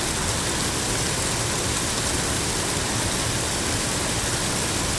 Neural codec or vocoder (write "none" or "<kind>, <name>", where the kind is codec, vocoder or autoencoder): none